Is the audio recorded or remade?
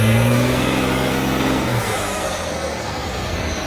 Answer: remade